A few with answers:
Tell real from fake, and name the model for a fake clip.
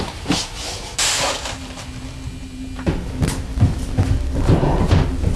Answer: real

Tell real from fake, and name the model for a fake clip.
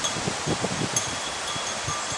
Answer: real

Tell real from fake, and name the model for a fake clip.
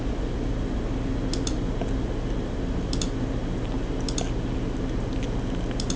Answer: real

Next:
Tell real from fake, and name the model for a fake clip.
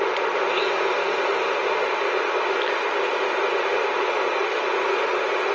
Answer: real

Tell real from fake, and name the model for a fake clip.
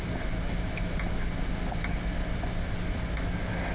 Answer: real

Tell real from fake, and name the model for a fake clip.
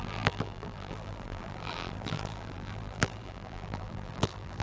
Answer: fake, vocoder, BigVGAN v2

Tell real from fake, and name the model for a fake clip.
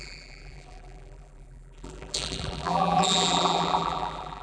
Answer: fake, vocoder, BigVGAN v2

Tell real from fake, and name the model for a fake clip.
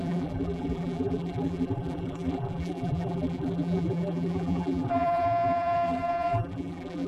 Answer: fake, vocoder, BigVGAN v2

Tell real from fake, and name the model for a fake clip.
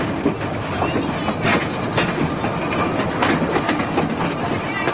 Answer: real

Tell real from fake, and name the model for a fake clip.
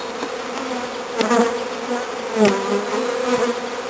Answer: real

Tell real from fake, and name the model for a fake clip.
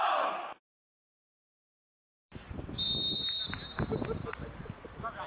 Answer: fake, vocoder, BigVGAN v2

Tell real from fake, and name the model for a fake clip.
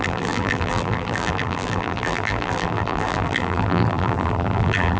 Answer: fake, vocoder, BigVGAN v2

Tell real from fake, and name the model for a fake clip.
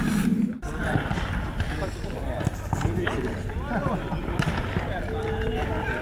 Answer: real